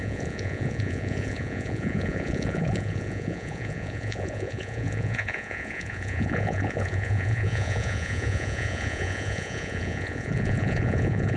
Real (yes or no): no